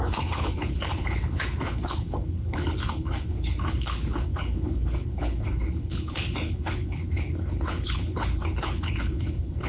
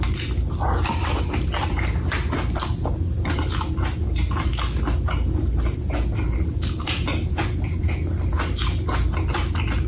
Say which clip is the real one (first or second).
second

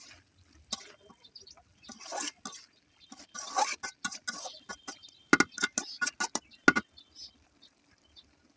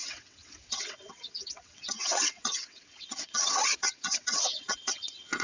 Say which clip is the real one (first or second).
first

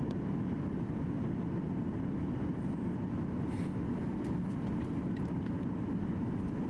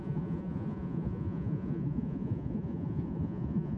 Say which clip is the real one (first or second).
first